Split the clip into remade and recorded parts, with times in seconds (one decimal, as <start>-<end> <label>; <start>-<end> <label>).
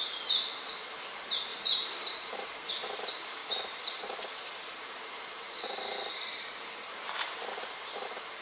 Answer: 0.0-1.5 recorded; 1.5-2.7 remade; 2.7-3.4 recorded; 3.4-7.8 remade; 7.8-8.4 recorded